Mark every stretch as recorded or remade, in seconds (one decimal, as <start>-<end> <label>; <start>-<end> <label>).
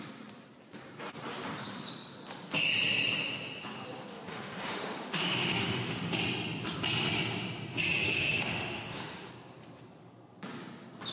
0.0-4.1 recorded; 4.1-6.2 remade; 6.2-8.1 recorded; 8.1-9.3 remade; 9.3-11.1 recorded